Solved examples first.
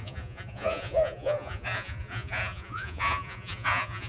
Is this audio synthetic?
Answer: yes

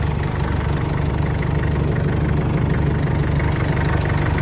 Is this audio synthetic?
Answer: no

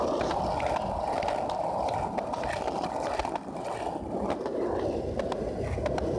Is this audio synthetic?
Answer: no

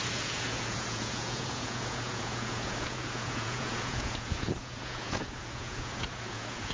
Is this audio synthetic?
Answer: yes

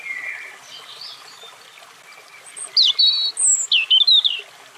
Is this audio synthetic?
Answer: no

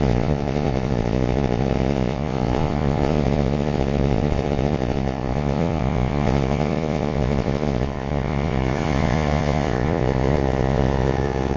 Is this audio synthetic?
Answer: yes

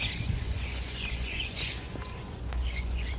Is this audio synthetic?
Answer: yes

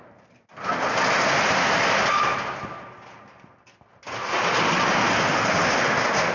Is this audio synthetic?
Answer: no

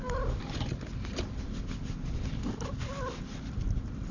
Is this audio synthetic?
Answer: no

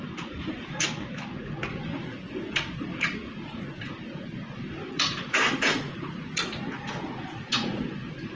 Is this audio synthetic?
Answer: yes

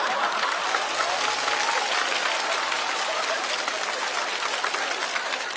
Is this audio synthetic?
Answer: no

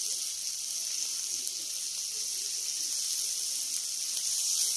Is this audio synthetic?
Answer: no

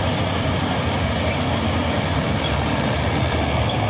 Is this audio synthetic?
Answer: no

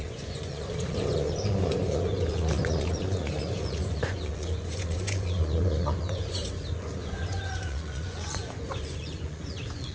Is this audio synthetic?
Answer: yes